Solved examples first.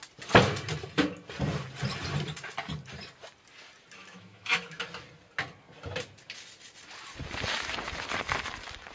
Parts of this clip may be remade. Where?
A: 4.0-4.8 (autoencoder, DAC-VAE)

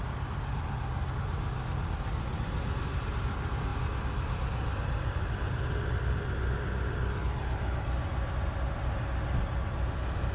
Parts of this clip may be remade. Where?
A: none

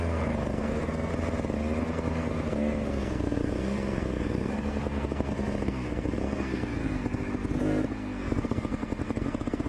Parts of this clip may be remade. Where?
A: 0.0-1.1 (codec, SNAC); 1.8-9.7

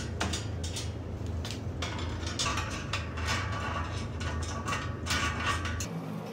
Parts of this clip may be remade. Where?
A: 2.5-4.2 (vocoder, BigVGAN v2)